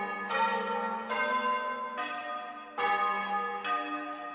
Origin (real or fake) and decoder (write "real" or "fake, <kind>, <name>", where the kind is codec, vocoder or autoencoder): real